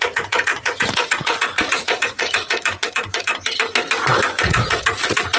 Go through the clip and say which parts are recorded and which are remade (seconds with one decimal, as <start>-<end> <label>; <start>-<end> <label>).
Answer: 0.0-3.3 remade; 3.3-4.4 recorded; 4.4-5.4 remade

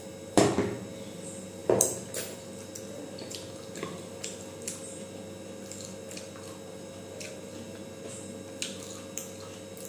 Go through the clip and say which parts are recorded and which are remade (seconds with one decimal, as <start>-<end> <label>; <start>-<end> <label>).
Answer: 0.0-9.9 recorded

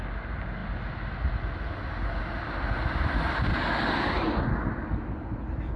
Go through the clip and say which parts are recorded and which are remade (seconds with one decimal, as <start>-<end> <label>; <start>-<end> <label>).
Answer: 0.0-5.8 recorded

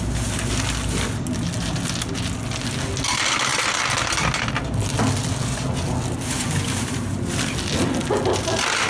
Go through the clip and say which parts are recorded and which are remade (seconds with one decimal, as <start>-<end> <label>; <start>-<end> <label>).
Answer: 0.0-8.9 recorded

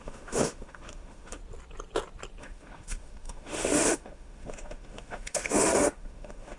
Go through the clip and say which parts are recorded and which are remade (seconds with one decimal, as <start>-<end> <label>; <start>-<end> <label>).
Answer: 0.0-1.4 remade; 1.4-2.4 recorded; 2.4-6.6 remade

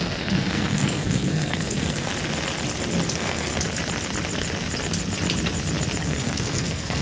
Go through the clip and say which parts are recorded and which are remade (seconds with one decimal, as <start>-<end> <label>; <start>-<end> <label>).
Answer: 0.0-2.1 remade; 2.1-3.1 recorded; 3.1-3.5 remade; 3.5-6.0 recorded; 6.0-7.0 remade

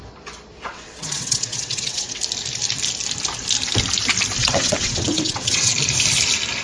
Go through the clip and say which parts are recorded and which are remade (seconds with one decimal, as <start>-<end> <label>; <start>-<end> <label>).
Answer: 0.0-0.7 recorded; 0.7-2.2 remade; 2.2-4.4 recorded; 4.4-5.7 remade; 5.7-6.6 recorded

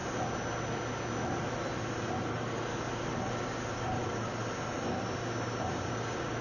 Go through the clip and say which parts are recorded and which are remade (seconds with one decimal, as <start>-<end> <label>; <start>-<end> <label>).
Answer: 0.0-2.3 recorded; 2.3-2.7 remade; 2.7-3.3 recorded; 3.3-4.4 remade; 4.4-5.9 recorded; 5.9-6.4 remade